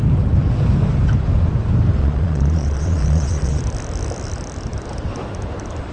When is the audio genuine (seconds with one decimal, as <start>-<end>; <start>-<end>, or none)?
0.0-2.0; 3.6-5.9